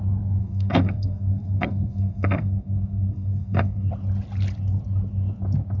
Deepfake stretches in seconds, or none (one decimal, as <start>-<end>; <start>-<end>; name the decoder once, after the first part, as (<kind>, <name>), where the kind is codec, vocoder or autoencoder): 0.4-3.9 (codec, SNAC)